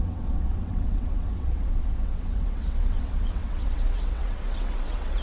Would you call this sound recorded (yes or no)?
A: no